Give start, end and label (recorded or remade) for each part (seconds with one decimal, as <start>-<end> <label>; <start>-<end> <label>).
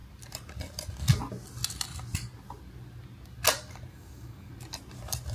0.0-3.9 recorded; 3.9-4.5 remade; 4.5-5.3 recorded